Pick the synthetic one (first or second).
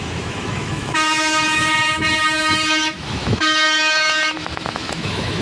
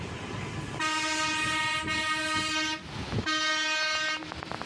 first